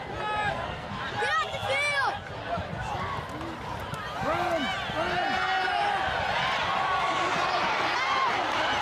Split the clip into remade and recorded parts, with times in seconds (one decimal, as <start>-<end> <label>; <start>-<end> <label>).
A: 0.0-0.5 recorded; 0.5-1.0 remade; 1.0-8.8 recorded